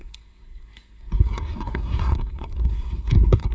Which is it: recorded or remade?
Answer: remade